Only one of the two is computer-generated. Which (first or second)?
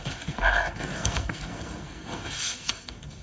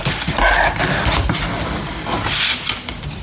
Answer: first